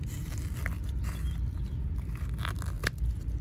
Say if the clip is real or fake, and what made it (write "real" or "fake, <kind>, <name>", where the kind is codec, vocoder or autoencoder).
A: real